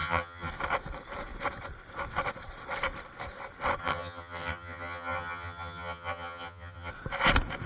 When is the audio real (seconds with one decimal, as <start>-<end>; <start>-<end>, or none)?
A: 0.5-3.8; 6.9-7.7